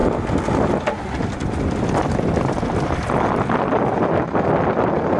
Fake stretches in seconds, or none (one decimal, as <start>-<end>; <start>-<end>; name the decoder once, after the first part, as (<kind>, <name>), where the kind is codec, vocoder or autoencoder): none